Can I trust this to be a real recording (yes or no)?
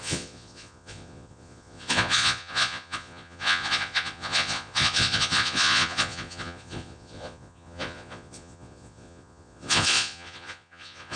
no